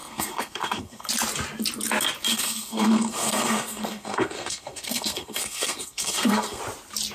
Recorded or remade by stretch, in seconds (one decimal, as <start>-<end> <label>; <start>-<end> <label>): 0.0-1.1 remade; 1.1-2.3 recorded; 2.3-6.6 remade; 6.6-7.1 recorded